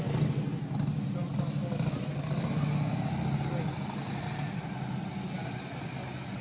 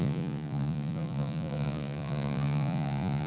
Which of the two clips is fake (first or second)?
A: second